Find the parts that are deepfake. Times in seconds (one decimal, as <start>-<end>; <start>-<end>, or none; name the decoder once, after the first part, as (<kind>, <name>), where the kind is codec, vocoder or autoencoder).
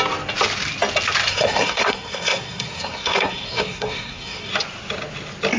1.3-4.5 (codec, SNAC)